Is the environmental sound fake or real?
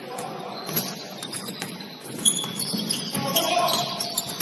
fake